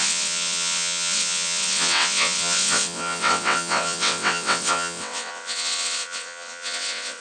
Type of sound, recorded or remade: remade